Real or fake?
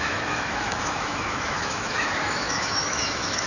fake